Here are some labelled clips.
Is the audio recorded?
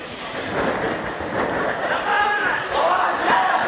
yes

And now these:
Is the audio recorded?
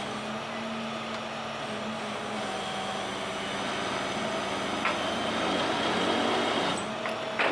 yes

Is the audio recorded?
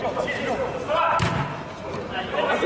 yes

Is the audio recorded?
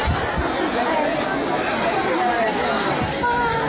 yes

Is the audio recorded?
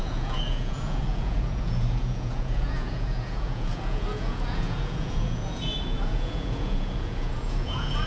no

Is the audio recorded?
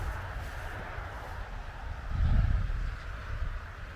yes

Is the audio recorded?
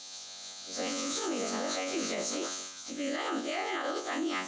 no